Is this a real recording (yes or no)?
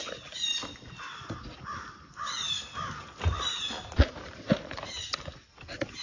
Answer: yes